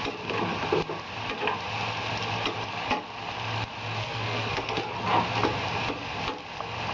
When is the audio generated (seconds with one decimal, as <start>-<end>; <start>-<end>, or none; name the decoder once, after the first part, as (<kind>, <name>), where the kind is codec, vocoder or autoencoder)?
4.0-4.8 (codec, SNAC)